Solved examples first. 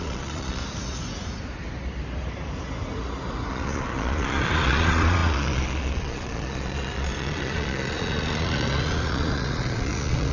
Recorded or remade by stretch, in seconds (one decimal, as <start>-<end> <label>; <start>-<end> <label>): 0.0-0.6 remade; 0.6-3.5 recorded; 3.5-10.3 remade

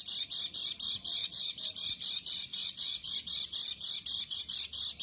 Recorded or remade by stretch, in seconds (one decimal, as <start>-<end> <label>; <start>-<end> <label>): 0.0-1.2 recorded; 1.2-1.7 remade; 1.7-2.5 recorded; 2.5-3.1 remade; 3.1-5.0 recorded

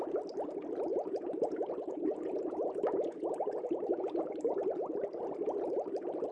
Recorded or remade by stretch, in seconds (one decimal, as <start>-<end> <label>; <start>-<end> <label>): 0.0-0.9 recorded; 0.9-4.2 remade; 4.2-6.3 recorded

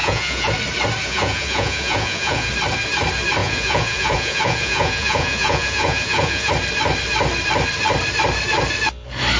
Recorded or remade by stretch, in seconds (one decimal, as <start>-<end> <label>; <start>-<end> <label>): 0.0-0.5 remade; 0.5-1.0 recorded; 1.0-2.5 remade; 2.5-3.4 recorded; 3.4-6.5 remade; 6.5-9.4 recorded